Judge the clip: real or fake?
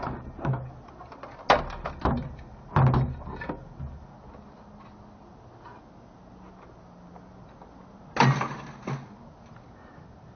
real